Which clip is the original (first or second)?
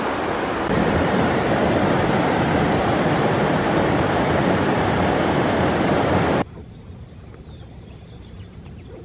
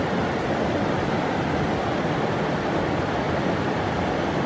second